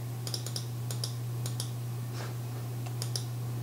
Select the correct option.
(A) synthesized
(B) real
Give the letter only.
B